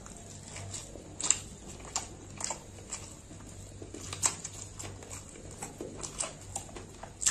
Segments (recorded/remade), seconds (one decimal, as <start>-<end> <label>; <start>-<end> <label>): 0.0-7.3 recorded